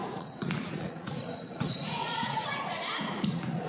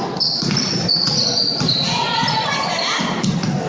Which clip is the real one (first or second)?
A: second